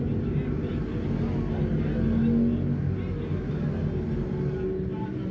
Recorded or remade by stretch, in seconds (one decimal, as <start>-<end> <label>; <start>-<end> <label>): 0.0-5.3 recorded